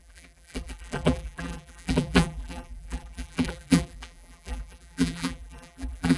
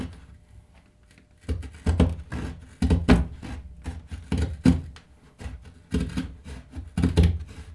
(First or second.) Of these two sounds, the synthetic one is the first